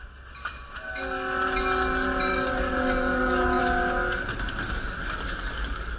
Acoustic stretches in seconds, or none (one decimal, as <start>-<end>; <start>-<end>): 0.0-2.3; 3.6-5.0